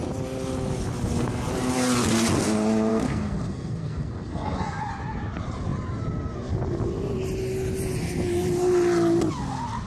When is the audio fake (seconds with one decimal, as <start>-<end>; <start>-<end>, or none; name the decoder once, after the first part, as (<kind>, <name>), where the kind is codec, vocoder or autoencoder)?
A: 2.9-4.8 (codec, SNAC)